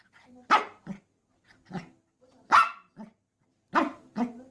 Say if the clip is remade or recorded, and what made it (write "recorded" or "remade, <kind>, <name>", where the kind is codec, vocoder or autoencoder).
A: recorded